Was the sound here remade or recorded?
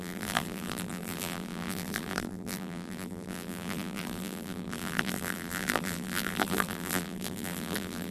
remade